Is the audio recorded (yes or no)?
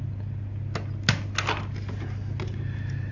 yes